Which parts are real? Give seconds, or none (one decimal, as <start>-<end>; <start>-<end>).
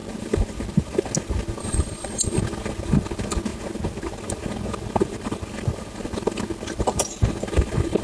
0.0-1.6; 2.4-8.0